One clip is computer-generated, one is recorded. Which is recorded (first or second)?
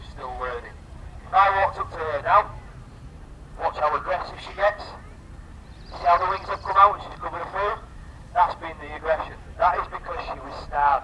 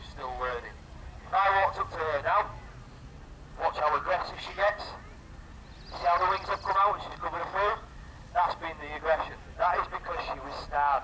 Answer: second